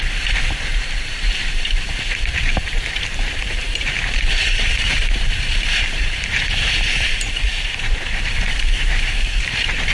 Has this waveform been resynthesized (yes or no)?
yes